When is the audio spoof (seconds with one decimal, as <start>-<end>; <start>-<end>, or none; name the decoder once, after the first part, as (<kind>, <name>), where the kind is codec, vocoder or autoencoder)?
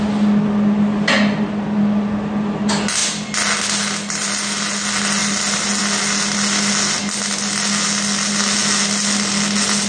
none